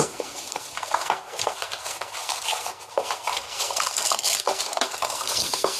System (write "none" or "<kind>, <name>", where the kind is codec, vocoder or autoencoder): codec, SNAC